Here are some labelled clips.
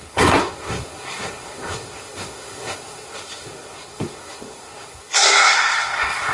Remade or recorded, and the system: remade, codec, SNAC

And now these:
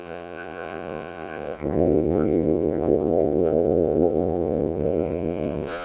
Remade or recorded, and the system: remade, vocoder, Vocos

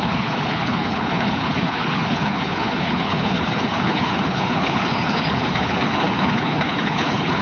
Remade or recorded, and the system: remade, codec, HILCodec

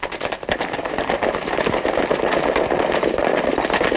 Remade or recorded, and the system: recorded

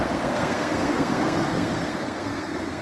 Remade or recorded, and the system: remade, codec, SNAC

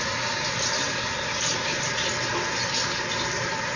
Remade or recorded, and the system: recorded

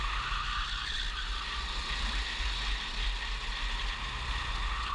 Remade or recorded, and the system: recorded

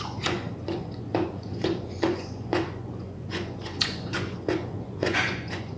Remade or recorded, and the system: remade, vocoder, Vocos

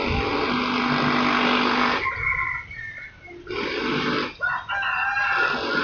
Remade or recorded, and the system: recorded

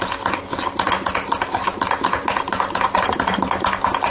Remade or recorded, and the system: recorded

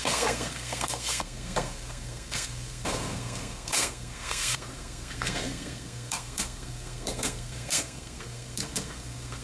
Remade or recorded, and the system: remade, codec, SNAC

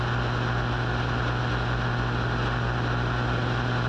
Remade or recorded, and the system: recorded